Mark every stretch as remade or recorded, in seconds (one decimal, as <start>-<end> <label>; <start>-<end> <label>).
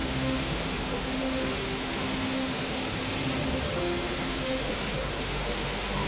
0.0-3.1 remade; 3.1-3.8 recorded; 3.8-6.1 remade